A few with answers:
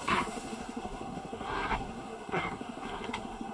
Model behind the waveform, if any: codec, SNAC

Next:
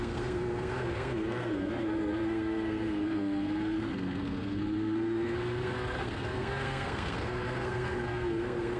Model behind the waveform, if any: codec, SNAC